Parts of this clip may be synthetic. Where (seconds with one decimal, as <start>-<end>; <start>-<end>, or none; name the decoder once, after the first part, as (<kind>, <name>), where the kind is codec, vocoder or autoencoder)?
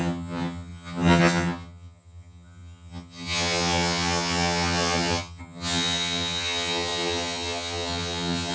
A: 0.0-8.5 (vocoder, HiFi-GAN)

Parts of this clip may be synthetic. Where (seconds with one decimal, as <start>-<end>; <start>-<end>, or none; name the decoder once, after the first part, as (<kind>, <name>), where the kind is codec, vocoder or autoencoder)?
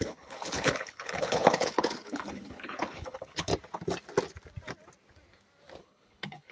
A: 0.0-3.5 (codec, HILCodec); 5.8-6.5